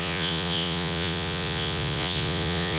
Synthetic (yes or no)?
yes